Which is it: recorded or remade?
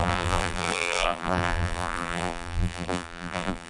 remade